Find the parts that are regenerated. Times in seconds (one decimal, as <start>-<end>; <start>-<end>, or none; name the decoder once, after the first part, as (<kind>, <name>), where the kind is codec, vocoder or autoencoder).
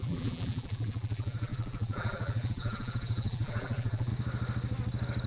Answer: 0.0-4.1 (vocoder, BigVGAN v2)